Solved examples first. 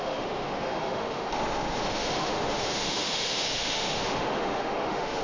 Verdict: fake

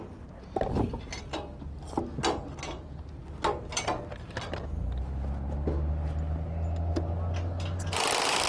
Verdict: real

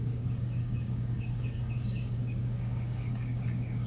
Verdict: fake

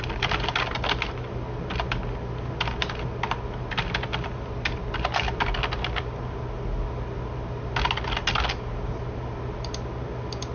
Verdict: real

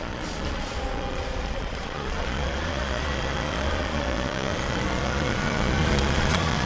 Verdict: fake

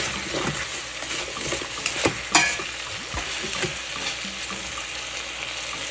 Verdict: real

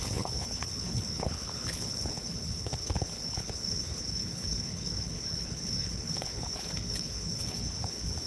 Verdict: fake